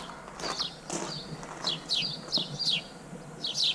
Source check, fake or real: real